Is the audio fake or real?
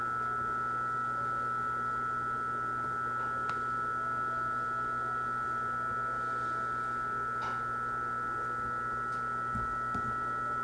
real